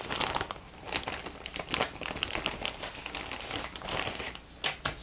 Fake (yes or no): no